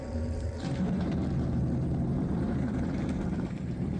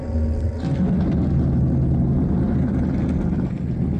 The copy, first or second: first